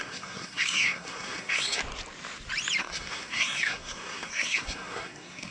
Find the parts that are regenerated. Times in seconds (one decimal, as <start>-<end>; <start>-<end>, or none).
0.0-1.8; 2.8-5.5